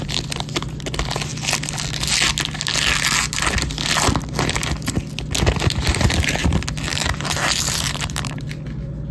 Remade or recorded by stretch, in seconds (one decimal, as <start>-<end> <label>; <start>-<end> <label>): 0.0-6.9 recorded; 6.9-8.5 remade; 8.5-9.1 recorded